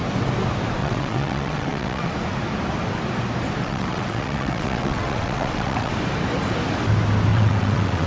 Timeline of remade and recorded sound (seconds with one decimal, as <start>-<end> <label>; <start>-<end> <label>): 0.0-0.8 recorded; 0.8-2.1 remade; 2.1-3.6 recorded; 3.6-5.9 remade; 5.9-7.3 recorded; 7.3-8.1 remade